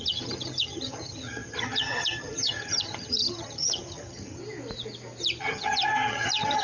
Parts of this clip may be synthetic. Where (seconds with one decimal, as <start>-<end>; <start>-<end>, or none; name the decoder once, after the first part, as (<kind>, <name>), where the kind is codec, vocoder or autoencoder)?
0.0-4.4 (vocoder, HiFi-GAN); 5.4-6.6